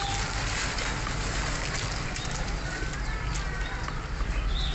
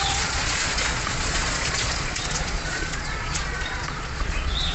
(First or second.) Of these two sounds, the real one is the first